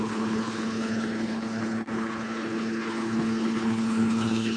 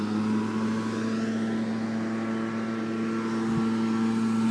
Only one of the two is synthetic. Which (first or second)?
first